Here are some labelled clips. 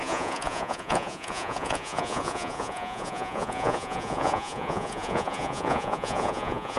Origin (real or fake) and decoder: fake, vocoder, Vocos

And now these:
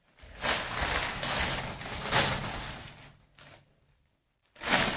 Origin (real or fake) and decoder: real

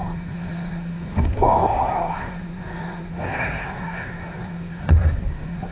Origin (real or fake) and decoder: fake, codec, SNAC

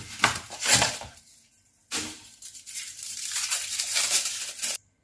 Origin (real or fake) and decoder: fake, vocoder, BigVGAN v2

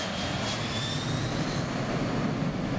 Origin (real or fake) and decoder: real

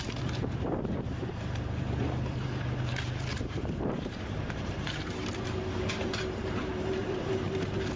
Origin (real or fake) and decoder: fake, vocoder, BigVGAN v2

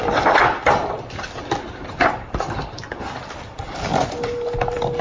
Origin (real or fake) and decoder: fake, vocoder, BigVGAN v2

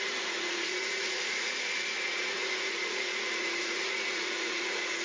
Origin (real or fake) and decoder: fake, vocoder, Vocos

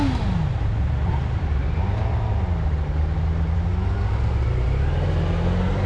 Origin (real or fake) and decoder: real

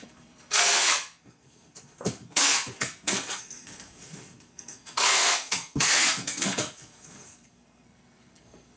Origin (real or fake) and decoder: fake, codec, SNAC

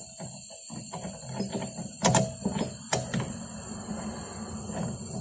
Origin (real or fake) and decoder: real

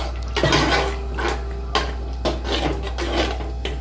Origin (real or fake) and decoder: real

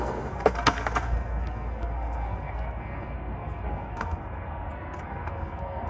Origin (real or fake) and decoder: fake, codec, SNAC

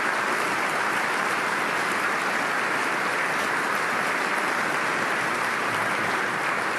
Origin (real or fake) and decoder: real